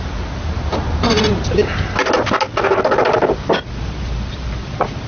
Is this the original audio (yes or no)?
yes